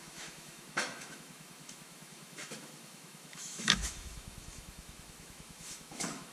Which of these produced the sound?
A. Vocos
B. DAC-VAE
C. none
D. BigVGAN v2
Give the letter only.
B